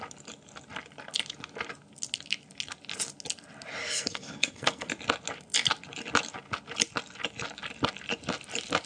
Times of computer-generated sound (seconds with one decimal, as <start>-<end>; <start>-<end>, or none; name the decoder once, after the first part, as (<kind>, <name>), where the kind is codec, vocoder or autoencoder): 3.8-4.9 (codec, SNAC)